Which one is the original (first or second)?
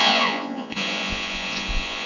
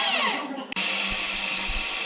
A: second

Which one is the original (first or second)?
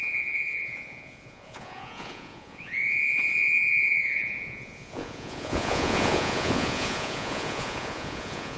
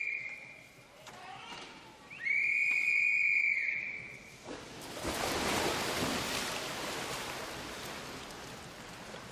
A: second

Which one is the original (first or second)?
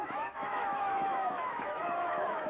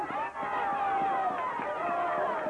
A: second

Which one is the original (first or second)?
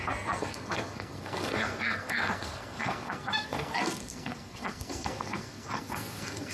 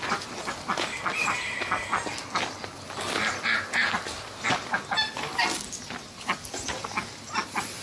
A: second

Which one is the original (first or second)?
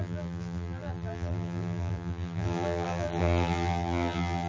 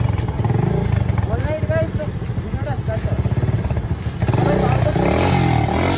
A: second